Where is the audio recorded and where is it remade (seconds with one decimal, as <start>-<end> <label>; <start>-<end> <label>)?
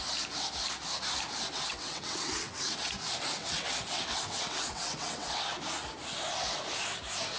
0.0-1.5 recorded; 1.5-2.9 remade; 2.9-3.4 recorded; 3.4-5.4 remade; 5.4-7.4 recorded